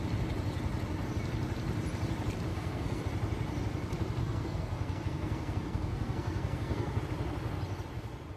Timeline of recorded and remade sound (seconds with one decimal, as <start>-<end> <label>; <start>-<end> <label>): 0.0-2.5 recorded; 2.5-3.0 remade; 3.0-4.2 recorded; 4.2-7.0 remade; 7.0-8.4 recorded